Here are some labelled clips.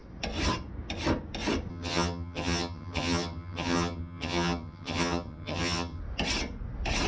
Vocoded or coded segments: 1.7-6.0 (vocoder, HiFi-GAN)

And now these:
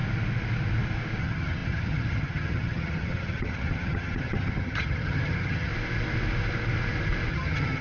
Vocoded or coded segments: 1.2-5.7 (vocoder, HiFi-GAN); 7.3-7.8

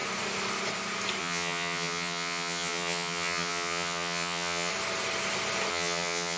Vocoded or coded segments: 1.2-4.7 (vocoder, HiFi-GAN); 5.7-6.4

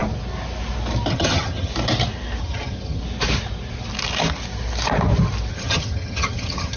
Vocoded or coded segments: 1.1-1.7 (vocoder, HiFi-GAN); 2.4-3.0; 5.5-6.8

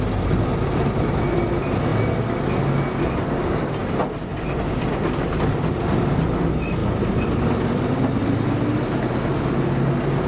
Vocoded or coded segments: none

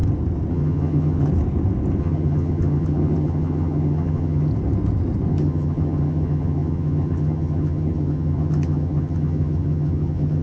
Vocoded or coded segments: 0.5-1.3 (vocoder, HiFi-GAN); 2.0-4.5; 5.3-10.4

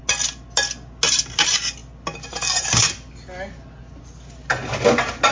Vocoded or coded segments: none

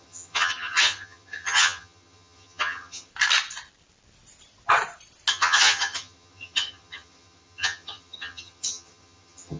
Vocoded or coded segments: 0.0-3.1 (vocoder, HiFi-GAN); 5.3-9.6